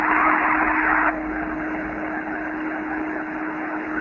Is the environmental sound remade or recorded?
remade